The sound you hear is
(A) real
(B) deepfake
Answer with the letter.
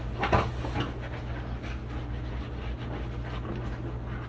A